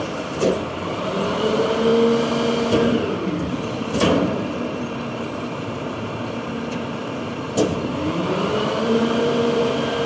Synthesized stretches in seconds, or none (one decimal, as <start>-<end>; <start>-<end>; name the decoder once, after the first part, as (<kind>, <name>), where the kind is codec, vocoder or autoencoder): 0.0-1.9 (vocoder, BigVGAN v2); 3.0-10.1